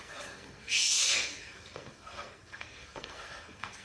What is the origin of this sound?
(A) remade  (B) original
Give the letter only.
A